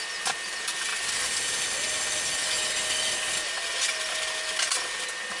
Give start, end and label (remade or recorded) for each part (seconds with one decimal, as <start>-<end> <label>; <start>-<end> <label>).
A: 0.0-5.4 recorded